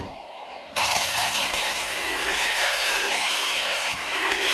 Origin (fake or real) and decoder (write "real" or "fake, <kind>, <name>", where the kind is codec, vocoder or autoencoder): fake, codec, SNAC